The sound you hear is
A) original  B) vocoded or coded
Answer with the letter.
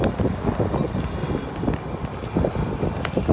A